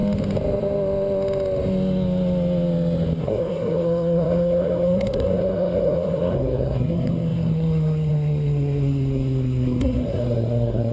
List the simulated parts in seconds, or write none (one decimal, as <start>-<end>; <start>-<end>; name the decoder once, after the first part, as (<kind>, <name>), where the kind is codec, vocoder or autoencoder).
3.2-10.9 (codec, SNAC)